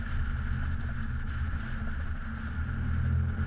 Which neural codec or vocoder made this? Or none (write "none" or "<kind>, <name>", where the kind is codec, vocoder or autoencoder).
none